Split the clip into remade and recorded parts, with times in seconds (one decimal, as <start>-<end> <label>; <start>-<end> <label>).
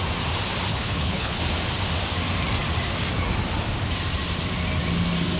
0.0-0.7 recorded; 0.7-1.4 remade; 1.4-5.4 recorded